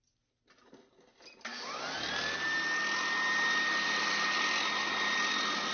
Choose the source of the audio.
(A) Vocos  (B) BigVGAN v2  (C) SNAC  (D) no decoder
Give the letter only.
D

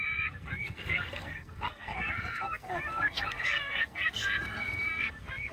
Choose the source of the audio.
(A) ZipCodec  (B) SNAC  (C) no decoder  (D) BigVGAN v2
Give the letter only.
B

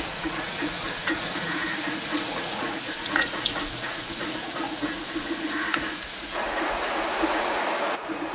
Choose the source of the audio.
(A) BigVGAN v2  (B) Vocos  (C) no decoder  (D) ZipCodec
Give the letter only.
B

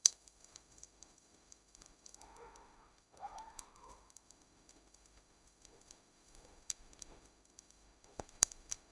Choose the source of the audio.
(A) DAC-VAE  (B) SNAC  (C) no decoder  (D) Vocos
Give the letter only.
A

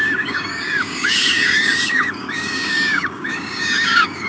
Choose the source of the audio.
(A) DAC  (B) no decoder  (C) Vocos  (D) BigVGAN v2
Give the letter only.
A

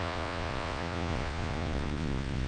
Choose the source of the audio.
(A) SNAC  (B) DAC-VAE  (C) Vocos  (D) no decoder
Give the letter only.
C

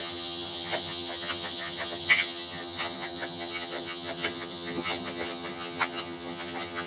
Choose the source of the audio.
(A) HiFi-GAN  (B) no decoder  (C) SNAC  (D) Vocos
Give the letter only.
A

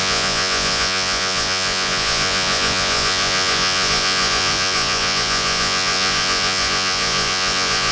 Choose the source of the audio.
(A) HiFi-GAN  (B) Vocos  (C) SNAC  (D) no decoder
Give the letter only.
B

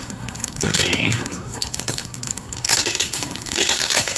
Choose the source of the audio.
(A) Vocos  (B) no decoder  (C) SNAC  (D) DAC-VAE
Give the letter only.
C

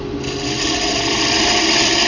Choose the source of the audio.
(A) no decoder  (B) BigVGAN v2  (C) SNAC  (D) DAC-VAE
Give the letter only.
A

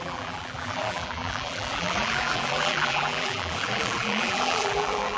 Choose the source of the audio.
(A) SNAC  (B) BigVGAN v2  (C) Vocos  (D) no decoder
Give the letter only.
B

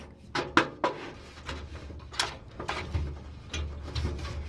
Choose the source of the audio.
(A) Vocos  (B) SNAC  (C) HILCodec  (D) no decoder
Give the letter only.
D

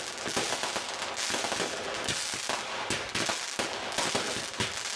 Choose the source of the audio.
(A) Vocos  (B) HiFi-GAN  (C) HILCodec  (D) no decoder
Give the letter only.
D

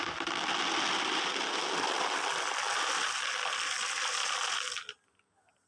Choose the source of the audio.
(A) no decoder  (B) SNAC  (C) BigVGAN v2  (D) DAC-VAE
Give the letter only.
A